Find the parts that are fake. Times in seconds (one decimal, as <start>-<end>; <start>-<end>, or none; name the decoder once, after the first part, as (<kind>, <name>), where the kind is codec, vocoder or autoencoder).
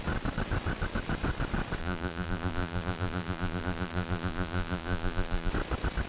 1.8-5.5 (vocoder, BigVGAN v2)